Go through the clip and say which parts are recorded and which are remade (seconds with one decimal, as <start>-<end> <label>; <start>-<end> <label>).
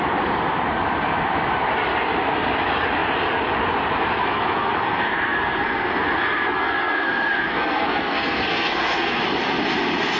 0.0-4.2 recorded; 4.2-9.2 remade; 9.2-10.2 recorded